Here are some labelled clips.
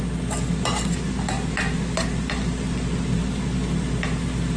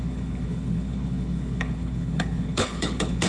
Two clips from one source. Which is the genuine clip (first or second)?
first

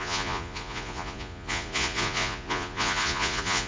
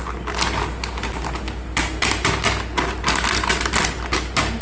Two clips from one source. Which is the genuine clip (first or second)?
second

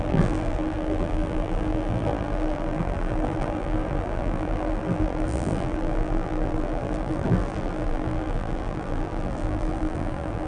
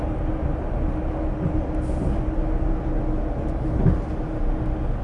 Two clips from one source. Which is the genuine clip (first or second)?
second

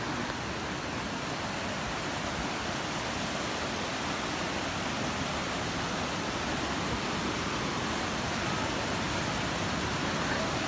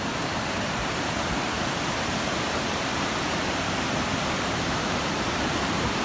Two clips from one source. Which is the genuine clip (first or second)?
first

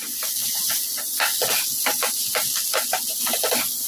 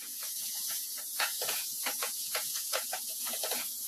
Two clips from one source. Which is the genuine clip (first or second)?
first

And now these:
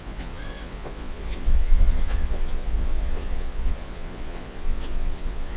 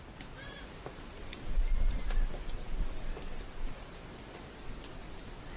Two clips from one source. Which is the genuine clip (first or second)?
second